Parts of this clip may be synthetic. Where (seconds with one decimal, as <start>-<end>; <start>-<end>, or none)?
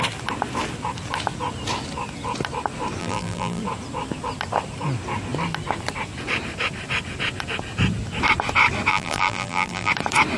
3.0-3.6; 8.9-9.9